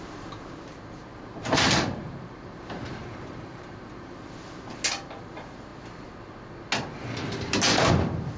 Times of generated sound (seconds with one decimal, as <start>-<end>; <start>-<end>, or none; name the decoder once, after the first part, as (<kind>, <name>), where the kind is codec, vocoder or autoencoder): 1.1-4.3 (vocoder, BigVGAN v2)